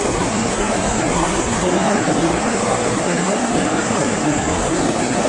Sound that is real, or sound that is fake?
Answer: fake